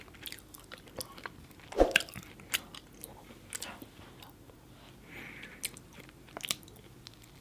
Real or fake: real